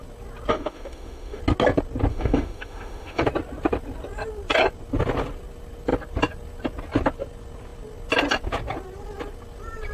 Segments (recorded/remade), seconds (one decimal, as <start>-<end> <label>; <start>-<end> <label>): 0.0-0.5 recorded; 0.5-1.4 remade; 1.4-2.1 recorded; 2.1-3.2 remade; 3.2-9.9 recorded